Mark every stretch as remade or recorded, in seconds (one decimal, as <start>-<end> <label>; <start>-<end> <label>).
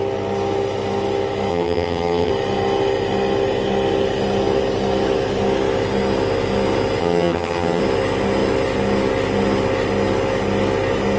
0.0-1.5 recorded; 1.5-2.3 remade; 2.3-7.0 recorded; 7.0-7.8 remade; 7.8-11.2 recorded